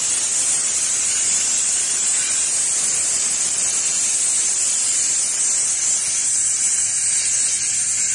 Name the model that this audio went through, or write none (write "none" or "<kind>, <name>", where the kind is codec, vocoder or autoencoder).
none